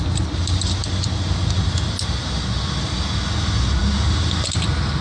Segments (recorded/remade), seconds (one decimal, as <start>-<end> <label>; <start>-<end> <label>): 0.0-5.0 recorded